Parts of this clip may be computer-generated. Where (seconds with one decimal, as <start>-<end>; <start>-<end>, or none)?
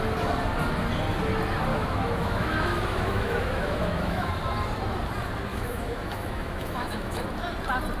1.7-4.3; 5.5-7.2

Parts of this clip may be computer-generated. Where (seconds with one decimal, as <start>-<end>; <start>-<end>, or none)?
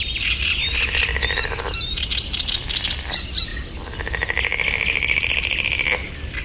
none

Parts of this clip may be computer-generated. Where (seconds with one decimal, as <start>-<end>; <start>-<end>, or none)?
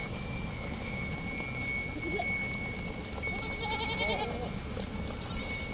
0.0-1.1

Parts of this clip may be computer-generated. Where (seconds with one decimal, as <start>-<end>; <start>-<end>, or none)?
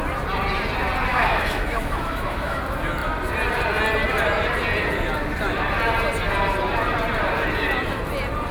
1.1-2.6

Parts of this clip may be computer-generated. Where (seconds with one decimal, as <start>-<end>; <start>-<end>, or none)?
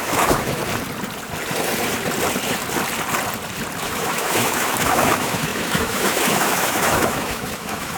0.0-0.6; 3.8-8.0